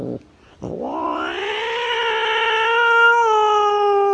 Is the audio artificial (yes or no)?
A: no